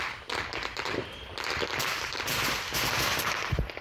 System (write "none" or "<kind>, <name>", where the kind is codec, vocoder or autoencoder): vocoder, BigVGAN v2